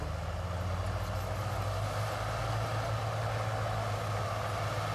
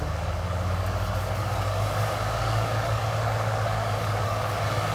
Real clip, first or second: first